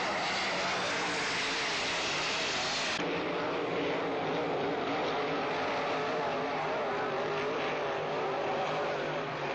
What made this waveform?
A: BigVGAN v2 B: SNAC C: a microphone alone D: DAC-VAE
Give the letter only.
C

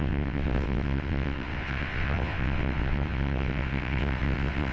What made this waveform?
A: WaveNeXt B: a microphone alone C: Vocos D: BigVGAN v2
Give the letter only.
A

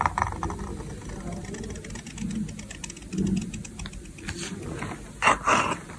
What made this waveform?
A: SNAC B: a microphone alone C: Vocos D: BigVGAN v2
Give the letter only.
B